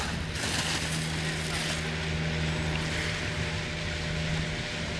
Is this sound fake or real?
real